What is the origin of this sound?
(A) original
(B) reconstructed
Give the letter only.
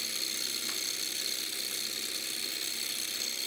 A